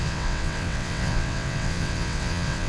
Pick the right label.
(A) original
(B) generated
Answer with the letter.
B